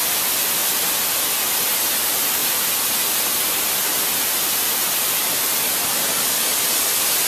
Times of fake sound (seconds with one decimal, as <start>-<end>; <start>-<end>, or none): none